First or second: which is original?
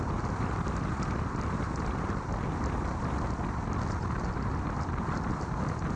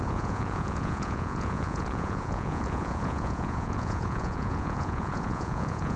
first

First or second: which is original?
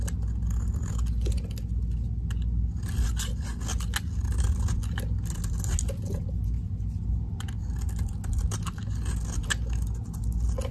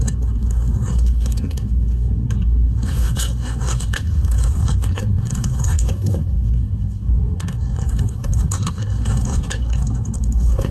first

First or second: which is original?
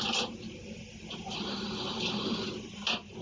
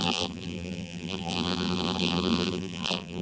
first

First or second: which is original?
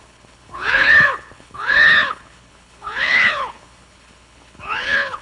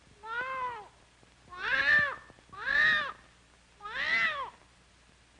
second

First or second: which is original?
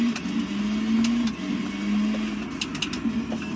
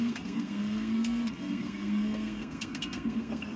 first